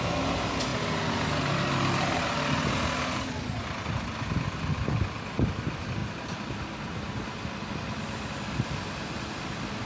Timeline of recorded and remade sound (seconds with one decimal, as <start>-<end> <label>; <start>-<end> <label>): 0.0-9.9 recorded